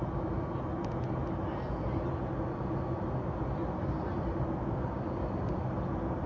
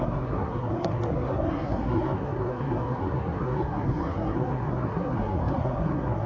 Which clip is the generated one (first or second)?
second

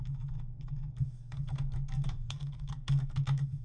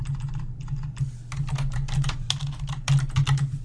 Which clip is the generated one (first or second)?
first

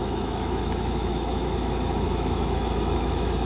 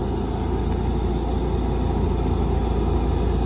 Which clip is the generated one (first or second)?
first